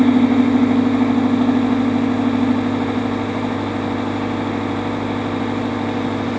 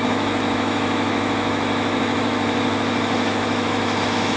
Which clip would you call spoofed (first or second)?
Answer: second